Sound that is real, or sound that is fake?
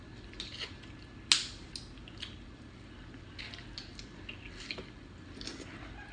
real